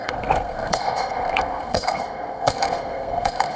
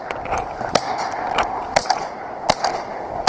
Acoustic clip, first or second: second